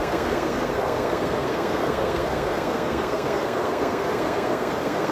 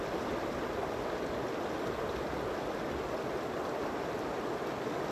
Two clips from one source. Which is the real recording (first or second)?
second